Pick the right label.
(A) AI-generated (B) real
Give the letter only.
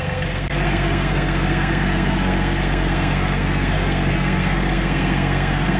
A